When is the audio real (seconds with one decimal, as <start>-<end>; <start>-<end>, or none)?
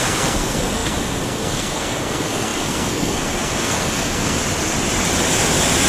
4.4-5.9